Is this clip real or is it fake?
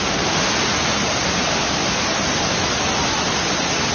real